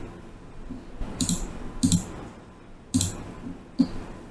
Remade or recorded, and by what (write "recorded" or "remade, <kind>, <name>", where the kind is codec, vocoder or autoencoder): recorded